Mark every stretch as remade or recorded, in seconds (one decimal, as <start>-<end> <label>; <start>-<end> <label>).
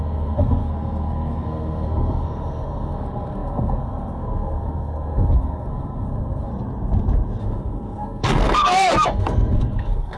0.0-6.5 remade; 6.5-7.4 recorded; 7.4-10.2 remade